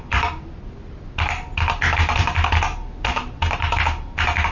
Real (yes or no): yes